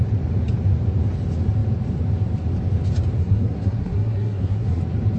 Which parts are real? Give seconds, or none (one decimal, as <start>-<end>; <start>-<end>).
0.0-3.2; 4.8-5.2